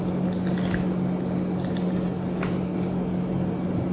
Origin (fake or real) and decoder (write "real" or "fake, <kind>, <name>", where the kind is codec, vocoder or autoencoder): real